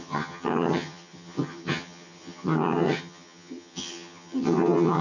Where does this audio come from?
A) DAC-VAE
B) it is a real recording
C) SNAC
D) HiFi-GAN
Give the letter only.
D